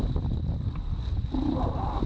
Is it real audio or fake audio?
real